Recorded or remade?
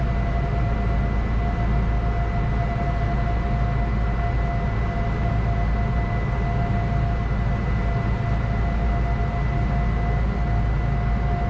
recorded